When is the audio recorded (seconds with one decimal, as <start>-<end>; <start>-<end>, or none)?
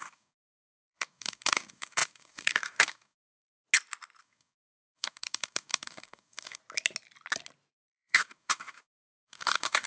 3.5-4.2; 6.6-7.8